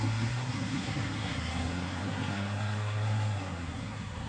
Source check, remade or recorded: remade